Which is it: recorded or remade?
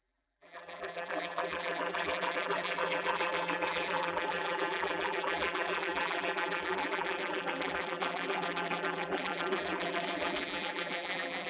remade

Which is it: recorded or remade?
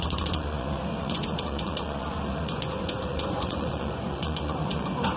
remade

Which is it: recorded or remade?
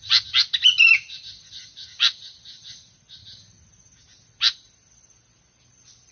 recorded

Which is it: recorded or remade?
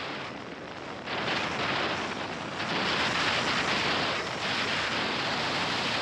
recorded